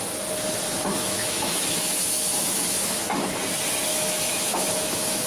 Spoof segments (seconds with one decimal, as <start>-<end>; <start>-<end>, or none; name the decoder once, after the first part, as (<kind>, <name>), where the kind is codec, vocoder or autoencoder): 0.9-3.4 (autoencoder, DAC-VAE); 3.9-5.3

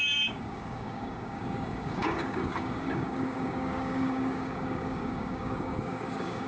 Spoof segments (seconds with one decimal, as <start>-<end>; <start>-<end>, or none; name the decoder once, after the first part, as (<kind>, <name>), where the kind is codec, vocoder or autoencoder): 0.0-6.5 (codec, DAC)

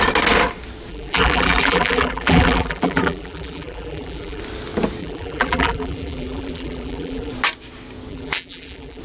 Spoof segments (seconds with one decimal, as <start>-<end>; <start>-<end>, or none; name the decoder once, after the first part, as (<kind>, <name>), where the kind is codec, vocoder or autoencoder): 0.9-4.4 (vocoder, BigVGAN v2); 5.0-7.3; 8.1-9.0

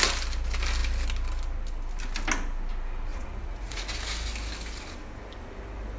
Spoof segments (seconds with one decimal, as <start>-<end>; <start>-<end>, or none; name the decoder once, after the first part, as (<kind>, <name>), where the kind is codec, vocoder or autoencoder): 3.1-3.9 (vocoder, Vocos)

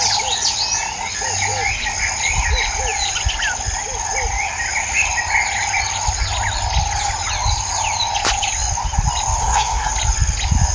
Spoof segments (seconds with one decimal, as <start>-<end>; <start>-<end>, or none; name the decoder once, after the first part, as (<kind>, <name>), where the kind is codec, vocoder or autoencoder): 9.4-9.9 (codec, SNAC)

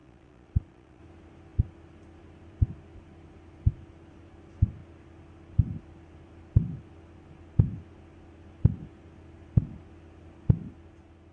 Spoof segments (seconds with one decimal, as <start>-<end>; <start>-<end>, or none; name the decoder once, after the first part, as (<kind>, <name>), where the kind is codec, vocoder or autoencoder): 0.0-1.0 (vocoder, Vocos)

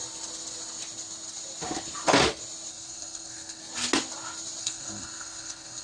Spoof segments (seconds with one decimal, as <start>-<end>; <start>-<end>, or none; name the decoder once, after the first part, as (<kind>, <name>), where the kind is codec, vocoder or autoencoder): 2.7-3.6 (codec, SNAC); 4.6-5.8